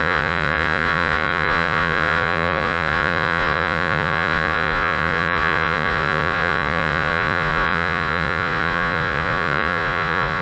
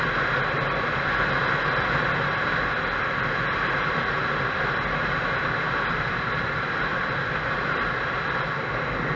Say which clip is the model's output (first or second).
first